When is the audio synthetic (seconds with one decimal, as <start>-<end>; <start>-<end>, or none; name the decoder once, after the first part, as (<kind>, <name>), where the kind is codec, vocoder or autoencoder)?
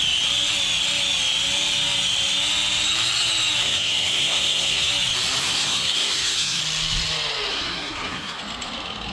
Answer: 3.6-4.9 (codec, SNAC); 5.4-6.6; 7.5-8.4